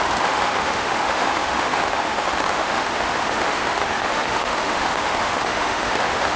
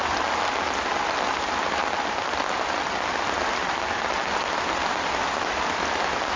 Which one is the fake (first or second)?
first